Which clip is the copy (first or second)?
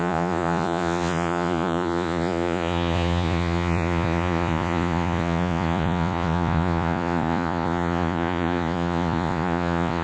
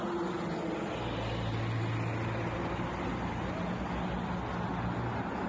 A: first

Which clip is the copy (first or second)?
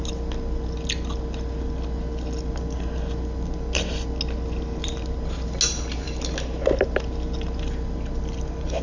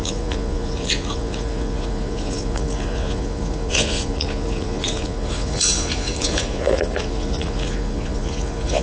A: second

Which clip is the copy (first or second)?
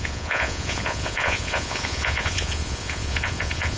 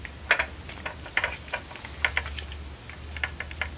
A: first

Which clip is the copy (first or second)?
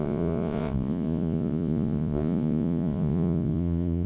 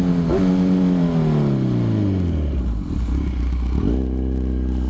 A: first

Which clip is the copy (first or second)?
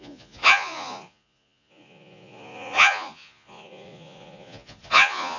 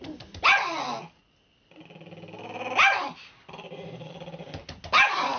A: first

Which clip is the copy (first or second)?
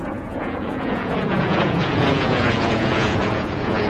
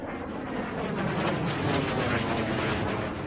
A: first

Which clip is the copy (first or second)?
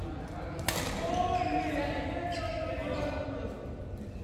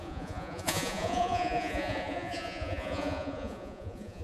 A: second